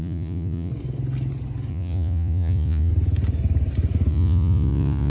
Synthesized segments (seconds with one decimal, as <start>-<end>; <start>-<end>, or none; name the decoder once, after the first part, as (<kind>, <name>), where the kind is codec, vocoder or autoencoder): 0.0-0.7 (vocoder, Vocos); 1.7-2.9; 4.1-5.1

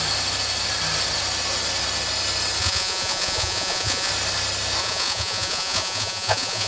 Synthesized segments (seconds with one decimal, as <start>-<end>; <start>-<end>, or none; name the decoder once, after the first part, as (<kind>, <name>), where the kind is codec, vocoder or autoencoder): 2.6-4.1 (vocoder, Vocos); 4.8-6.7